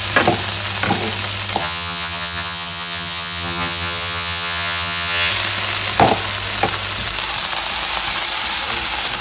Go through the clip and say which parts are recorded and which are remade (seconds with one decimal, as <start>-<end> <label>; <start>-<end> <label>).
0.0-1.6 recorded; 1.6-5.3 remade; 5.3-9.2 recorded